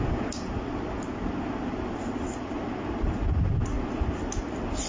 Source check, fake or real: real